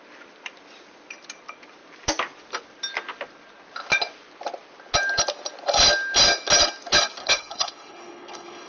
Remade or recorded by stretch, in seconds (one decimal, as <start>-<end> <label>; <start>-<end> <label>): 0.0-7.2 recorded; 7.2-8.7 remade

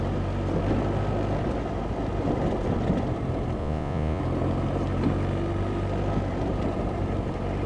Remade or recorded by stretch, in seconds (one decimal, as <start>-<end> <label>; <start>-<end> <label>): 0.0-3.6 recorded; 3.6-4.2 remade; 4.2-7.7 recorded